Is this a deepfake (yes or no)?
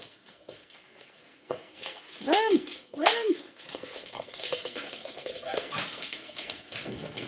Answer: yes